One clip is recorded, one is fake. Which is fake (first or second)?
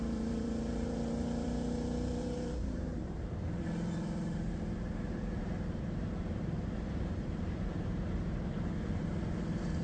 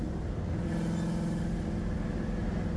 first